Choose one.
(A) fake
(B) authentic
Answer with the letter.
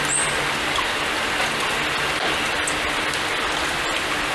B